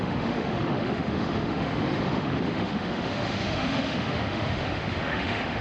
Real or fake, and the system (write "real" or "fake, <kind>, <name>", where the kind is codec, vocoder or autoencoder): fake, autoencoder, DAC-VAE